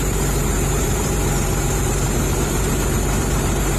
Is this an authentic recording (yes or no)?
no